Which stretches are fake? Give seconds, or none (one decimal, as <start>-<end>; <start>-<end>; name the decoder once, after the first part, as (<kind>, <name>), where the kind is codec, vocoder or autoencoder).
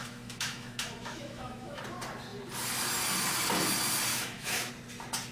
0.0-1.8 (autoencoder, DAC-VAE); 4.1-4.7